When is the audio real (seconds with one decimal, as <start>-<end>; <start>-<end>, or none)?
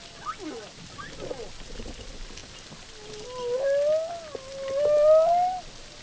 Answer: 0.0-6.0